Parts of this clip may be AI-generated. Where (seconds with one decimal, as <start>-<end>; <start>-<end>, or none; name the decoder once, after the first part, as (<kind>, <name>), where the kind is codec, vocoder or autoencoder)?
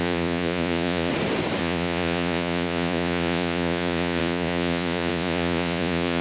0.0-1.1 (vocoder, Vocos); 1.6-6.2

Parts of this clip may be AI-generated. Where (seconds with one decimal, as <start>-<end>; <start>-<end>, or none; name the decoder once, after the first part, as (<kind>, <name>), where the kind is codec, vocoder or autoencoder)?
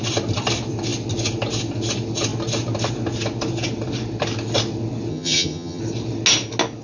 5.1-5.8 (vocoder, HiFi-GAN)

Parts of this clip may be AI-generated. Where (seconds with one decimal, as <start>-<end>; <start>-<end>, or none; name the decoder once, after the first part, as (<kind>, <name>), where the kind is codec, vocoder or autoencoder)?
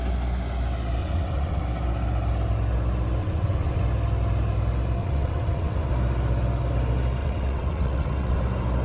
1.0-1.6 (vocoder, WaveNeXt); 3.2-3.8; 5.0-5.9; 7.2-8.4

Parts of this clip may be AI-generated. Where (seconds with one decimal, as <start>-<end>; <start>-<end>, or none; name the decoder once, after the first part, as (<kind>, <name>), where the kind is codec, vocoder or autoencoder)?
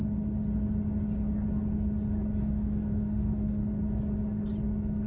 2.4-3.6 (autoencoder, DAC-VAE)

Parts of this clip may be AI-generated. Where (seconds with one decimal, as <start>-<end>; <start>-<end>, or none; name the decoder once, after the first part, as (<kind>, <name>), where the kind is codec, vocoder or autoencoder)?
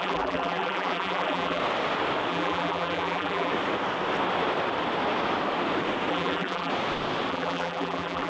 0.0-1.6 (vocoder, BigVGAN v2); 2.3-3.5; 6.1-6.7; 7.3-8.3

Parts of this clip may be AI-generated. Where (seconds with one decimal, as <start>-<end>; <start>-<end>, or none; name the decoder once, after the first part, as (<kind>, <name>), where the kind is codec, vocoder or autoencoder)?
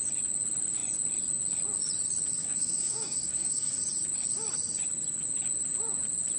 2.4-3.8 (codec, DAC)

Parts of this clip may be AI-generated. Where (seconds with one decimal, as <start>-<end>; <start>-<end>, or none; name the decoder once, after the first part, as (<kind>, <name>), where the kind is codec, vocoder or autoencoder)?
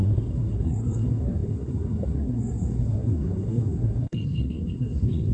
0.0-5.3 (codec, SNAC)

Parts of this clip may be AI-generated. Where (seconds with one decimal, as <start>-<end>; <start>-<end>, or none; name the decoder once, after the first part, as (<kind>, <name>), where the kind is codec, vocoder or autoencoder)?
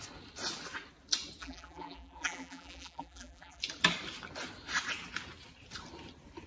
1.4-3.6 (vocoder, BigVGAN v2)